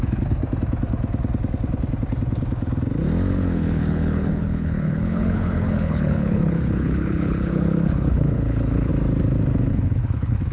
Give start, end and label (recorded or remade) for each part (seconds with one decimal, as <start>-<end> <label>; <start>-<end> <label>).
0.0-0.4 remade; 0.4-3.3 recorded; 3.3-8.9 remade; 8.9-9.7 recorded; 9.7-10.5 remade